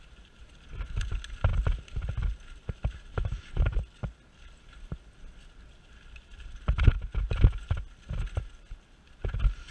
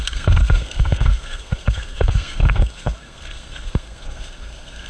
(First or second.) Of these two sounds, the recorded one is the first